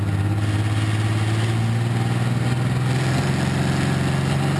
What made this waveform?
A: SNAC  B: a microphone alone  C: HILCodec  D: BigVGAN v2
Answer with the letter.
B